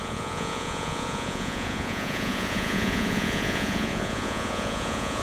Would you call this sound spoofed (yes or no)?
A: yes